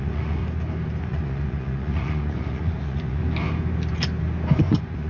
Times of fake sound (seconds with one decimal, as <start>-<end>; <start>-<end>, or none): 0.0-0.4; 1.0-3.2; 4.6-5.1